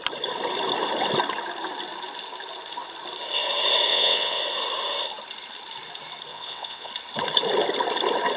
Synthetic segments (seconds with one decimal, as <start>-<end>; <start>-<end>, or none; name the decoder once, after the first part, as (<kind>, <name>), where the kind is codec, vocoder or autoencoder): 3.9-4.4 (vocoder, WaveNeXt); 6.3-6.9